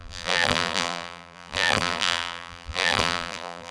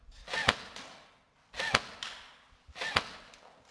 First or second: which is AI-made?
first